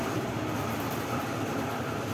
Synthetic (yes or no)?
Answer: no